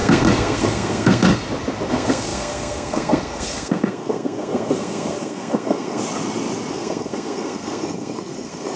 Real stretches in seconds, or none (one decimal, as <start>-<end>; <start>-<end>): 1.3-1.9; 6.0-6.7